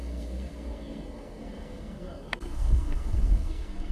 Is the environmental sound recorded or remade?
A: remade